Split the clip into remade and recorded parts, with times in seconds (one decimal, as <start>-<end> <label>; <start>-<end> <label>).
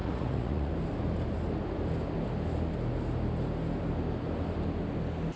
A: 0.0-0.7 remade; 0.7-5.4 recorded